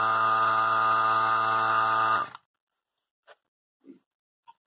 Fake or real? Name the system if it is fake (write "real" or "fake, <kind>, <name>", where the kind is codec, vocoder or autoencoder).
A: real